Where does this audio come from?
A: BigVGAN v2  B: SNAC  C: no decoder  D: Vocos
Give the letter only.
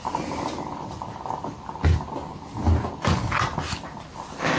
C